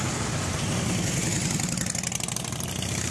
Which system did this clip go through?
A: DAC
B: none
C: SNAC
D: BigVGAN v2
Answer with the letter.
B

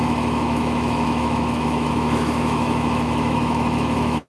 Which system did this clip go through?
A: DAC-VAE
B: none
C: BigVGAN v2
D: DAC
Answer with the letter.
A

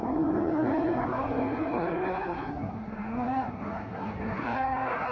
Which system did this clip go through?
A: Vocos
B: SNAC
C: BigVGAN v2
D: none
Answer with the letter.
B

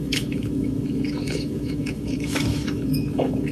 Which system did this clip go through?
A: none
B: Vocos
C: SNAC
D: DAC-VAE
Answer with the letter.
D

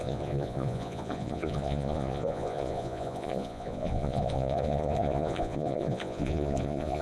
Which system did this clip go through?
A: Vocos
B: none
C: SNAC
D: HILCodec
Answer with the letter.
A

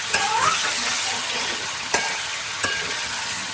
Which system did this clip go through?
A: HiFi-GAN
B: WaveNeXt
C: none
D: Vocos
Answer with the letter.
A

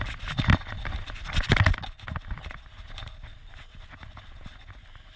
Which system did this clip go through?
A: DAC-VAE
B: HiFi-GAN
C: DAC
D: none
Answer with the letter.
D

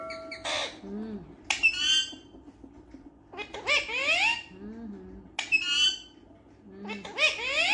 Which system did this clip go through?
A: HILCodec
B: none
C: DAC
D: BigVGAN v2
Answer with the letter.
B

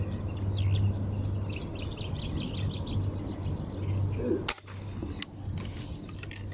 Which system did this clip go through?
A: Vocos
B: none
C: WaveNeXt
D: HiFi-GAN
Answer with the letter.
B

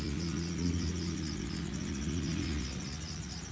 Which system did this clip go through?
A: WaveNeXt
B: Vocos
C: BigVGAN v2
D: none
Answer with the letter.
B